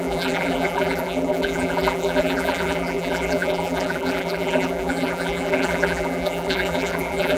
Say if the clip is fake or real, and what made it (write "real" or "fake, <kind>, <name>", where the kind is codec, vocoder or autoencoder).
fake, vocoder, BigVGAN v2